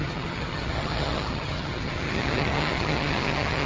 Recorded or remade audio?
remade